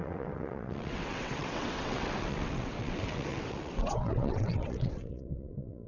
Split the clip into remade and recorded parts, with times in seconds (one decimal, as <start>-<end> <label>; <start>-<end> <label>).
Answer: 0.0-5.9 remade